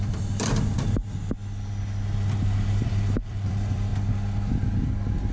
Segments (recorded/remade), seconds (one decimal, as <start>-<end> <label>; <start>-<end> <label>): 0.0-1.0 remade; 1.0-2.6 recorded; 2.6-3.9 remade; 3.9-5.3 recorded